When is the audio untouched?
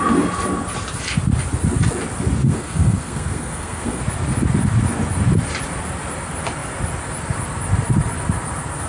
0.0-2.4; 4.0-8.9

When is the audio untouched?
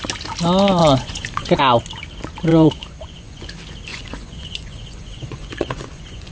0.0-0.8; 1.6-2.5; 3.5-3.9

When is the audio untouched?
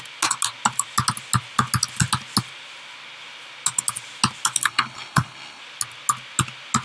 0.0-4.6; 5.6-6.8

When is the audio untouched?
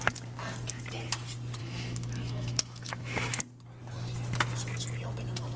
0.0-1.6; 3.4-5.6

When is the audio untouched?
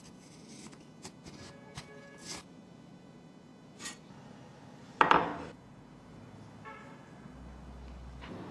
0.0-8.5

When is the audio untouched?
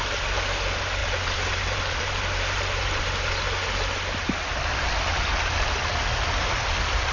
0.0-1.0; 3.3-7.1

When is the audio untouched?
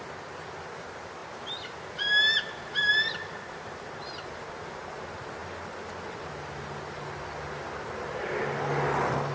0.0-1.2; 1.8-2.9; 4.5-9.3